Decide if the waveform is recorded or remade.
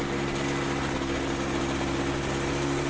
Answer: recorded